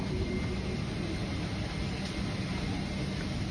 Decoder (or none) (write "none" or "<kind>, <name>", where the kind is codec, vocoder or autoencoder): none